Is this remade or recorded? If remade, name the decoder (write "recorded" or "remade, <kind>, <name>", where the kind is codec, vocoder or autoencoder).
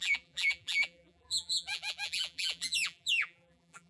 remade, vocoder, BigVGAN v2